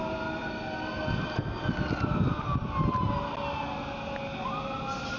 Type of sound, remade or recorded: recorded